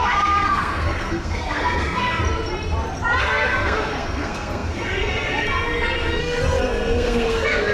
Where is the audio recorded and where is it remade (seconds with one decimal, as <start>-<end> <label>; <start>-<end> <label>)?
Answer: 0.0-2.2 remade; 2.2-3.2 recorded; 3.2-7.7 remade